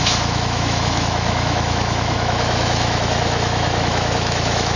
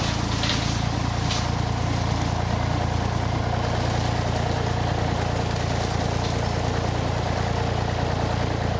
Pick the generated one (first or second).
first